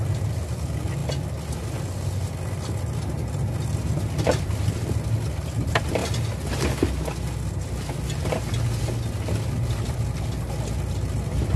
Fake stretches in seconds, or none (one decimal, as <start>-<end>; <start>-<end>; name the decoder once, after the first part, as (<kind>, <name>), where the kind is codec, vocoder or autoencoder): none